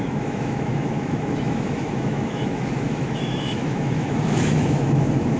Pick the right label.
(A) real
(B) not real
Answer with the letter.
B